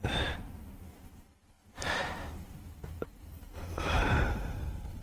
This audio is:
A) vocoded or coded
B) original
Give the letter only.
A